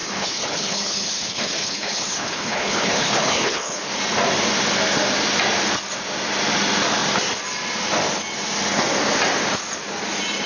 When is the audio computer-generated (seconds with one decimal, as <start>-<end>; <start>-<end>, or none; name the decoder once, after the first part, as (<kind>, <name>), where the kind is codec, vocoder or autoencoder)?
0.0-3.9 (codec, HILCodec)